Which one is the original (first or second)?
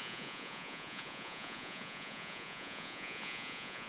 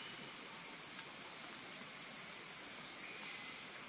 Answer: second